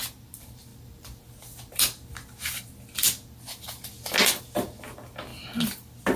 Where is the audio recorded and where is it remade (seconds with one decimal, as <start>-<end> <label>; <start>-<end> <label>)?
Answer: 0.0-6.2 recorded